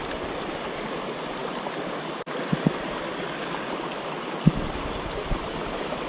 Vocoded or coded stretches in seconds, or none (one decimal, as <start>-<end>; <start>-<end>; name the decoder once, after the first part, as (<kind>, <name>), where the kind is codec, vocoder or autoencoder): none